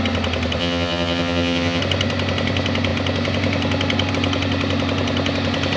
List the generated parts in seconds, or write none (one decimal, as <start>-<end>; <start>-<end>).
0.6-1.8